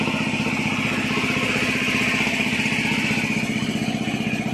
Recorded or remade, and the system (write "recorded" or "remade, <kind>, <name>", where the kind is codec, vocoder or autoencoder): recorded